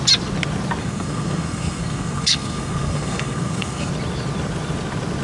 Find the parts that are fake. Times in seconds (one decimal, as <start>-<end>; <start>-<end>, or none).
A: 0.8-3.9